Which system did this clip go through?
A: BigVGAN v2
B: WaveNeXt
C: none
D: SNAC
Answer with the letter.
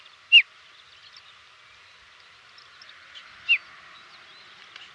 C